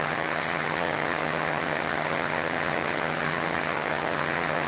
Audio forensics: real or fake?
fake